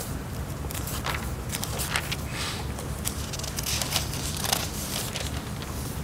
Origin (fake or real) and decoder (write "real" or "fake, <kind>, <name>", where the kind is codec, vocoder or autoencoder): fake, vocoder, BigVGAN v2